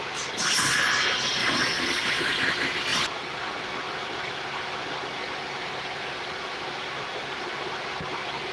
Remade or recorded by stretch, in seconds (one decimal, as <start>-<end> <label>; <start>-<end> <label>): 0.0-1.4 recorded; 1.4-2.4 remade; 2.4-8.5 recorded